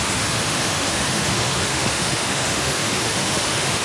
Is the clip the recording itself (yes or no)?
no